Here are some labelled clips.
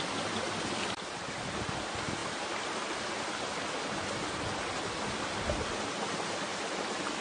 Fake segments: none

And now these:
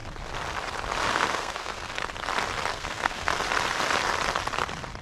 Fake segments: 1.1-1.9; 2.7-3.3